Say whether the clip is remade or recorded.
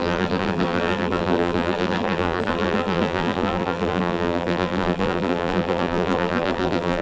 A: remade